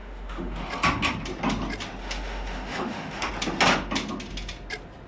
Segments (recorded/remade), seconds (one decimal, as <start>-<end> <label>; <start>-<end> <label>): 0.0-0.7 remade; 0.7-2.0 recorded; 2.0-3.3 remade; 3.3-5.1 recorded